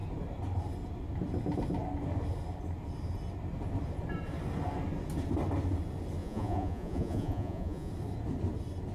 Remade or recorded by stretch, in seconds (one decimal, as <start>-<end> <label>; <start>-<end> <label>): 0.0-6.2 recorded; 6.2-7.9 remade; 7.9-8.9 recorded